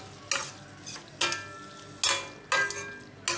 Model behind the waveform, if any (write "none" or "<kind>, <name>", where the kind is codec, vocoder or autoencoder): none